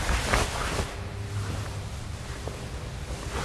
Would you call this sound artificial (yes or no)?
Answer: no